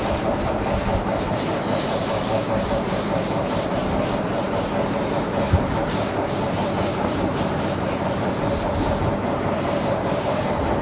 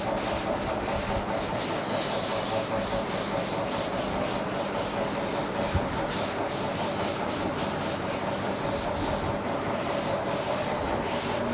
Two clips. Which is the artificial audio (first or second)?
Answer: first